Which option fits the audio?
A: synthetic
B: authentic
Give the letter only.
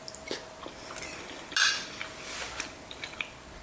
B